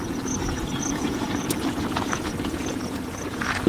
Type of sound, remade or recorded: remade